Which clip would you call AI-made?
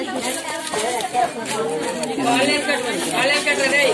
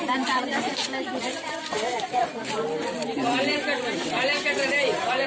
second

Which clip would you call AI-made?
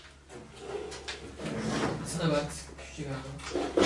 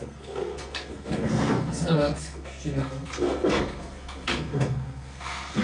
second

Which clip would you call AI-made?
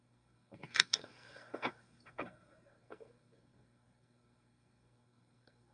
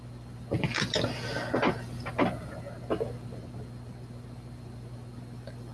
first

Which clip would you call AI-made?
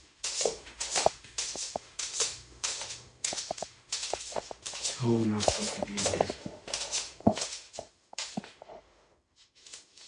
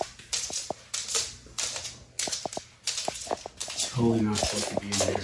first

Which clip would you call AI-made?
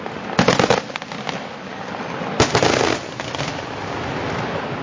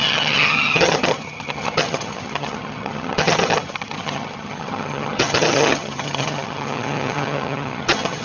second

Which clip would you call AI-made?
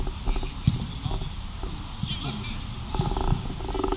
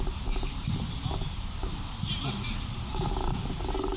second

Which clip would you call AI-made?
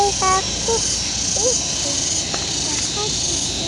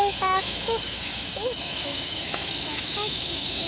second